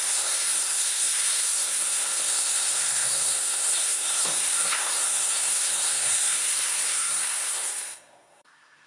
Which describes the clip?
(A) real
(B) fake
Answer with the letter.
B